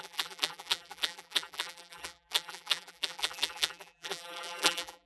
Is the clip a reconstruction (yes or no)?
yes